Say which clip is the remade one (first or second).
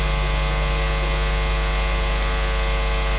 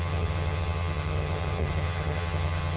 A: second